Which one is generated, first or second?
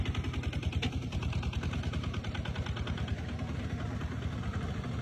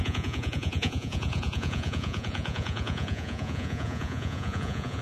second